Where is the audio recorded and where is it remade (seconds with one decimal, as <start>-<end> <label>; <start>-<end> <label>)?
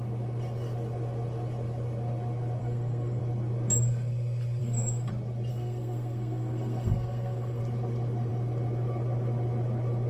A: 0.0-2.6 recorded; 2.6-3.2 remade; 3.2-4.6 recorded; 4.6-5.1 remade; 5.1-5.5 recorded; 5.5-7.6 remade; 7.6-10.1 recorded